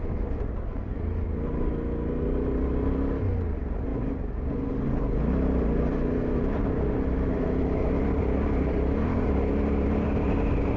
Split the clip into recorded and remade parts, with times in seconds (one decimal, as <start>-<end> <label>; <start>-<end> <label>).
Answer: 0.0-10.8 recorded